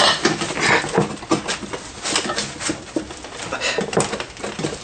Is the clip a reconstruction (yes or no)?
no